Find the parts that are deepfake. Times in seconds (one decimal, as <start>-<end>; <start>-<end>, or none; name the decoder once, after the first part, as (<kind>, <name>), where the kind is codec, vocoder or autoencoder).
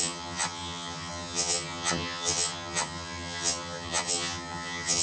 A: 0.0-5.0 (vocoder, HiFi-GAN)